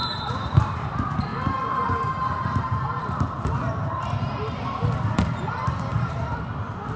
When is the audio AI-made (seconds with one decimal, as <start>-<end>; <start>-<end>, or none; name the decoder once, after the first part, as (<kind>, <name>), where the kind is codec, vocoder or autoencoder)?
0.0-0.9 (vocoder, BigVGAN v2); 1.3-5.5; 5.9-6.4